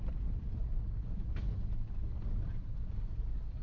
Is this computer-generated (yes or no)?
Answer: no